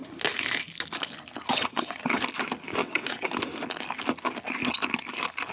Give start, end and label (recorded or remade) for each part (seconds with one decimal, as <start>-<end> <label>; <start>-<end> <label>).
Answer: 0.0-1.5 recorded; 1.5-2.2 remade; 2.2-2.8 recorded; 2.8-3.3 remade; 3.3-5.5 recorded